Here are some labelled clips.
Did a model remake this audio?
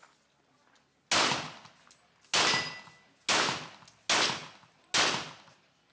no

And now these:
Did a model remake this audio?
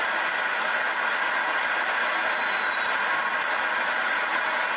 no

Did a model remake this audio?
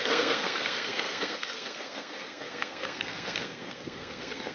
yes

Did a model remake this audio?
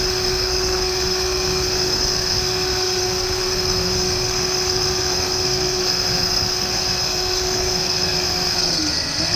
yes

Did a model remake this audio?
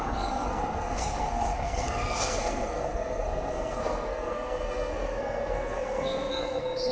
yes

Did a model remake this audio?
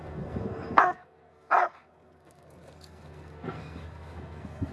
yes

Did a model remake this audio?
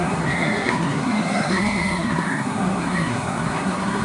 yes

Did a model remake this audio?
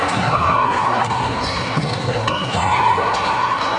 yes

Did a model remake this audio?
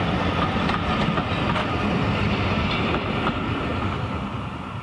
no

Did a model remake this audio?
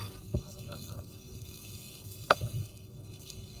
yes